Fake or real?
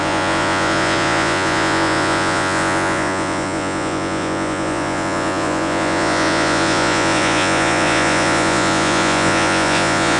fake